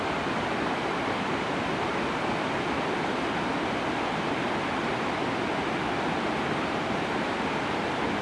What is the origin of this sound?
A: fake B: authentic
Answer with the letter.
B